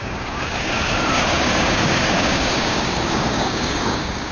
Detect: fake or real fake